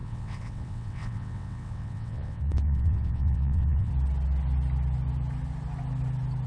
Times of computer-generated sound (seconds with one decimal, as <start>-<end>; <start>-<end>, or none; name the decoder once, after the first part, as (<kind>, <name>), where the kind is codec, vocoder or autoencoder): 0.0-3.9 (vocoder, WaveNeXt)